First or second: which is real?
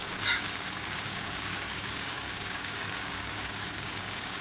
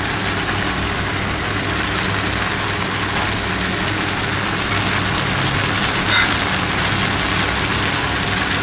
second